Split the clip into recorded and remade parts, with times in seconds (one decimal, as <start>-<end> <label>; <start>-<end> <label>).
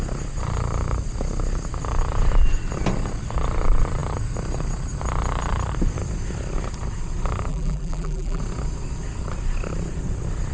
0.0-7.5 recorded; 7.5-8.4 remade; 8.4-10.5 recorded